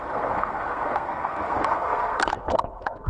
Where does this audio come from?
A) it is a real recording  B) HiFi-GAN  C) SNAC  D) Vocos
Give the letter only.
C